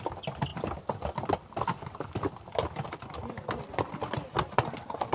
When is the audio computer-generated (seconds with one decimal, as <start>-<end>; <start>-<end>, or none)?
none